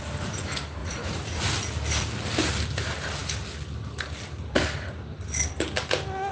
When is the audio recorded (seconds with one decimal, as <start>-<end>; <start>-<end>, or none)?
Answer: 0.0-0.8; 1.5-6.3

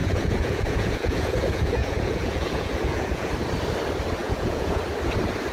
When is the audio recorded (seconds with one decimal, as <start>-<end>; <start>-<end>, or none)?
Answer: 3.3-4.2; 4.8-5.5

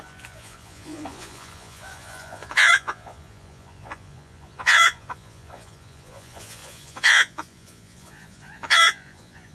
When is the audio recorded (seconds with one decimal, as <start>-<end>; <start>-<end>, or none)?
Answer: none

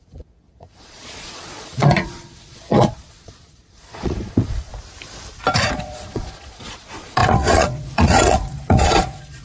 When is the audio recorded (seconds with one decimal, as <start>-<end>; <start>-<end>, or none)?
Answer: 4.7-5.7